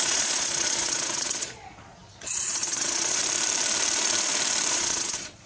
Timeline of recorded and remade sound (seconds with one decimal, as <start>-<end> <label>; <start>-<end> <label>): 0.0-3.2 remade; 3.2-4.7 recorded; 4.7-5.5 remade